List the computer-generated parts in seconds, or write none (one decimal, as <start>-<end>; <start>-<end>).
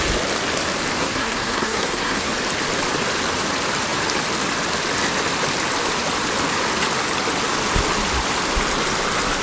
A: 1.0-2.3